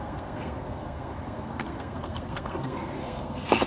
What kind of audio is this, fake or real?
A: fake